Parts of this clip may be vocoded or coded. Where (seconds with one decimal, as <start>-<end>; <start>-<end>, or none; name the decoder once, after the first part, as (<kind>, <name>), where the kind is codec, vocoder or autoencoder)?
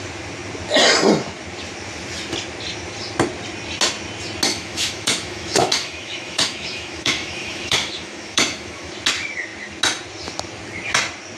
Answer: 4.5-8.9 (autoencoder, DAC-VAE)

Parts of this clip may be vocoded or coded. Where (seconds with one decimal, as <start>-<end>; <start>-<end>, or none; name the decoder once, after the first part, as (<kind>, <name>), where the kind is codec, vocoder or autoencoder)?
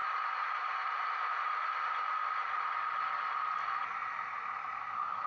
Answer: none